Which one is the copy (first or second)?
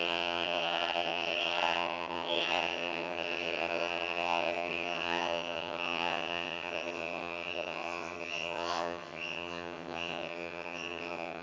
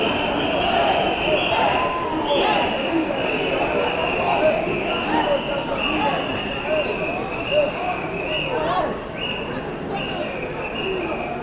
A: first